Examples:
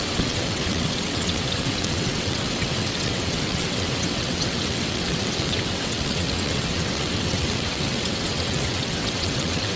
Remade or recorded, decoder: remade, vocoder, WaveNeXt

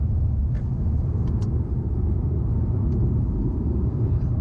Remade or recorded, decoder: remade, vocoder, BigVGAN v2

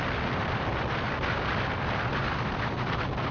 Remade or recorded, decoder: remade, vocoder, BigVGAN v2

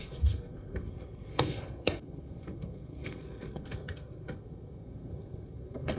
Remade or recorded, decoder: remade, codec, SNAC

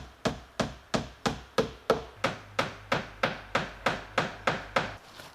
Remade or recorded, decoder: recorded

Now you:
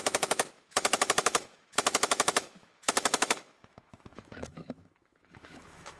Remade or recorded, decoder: remade, autoencoder, DAC-VAE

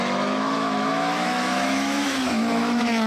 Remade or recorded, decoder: remade, autoencoder, DAC-VAE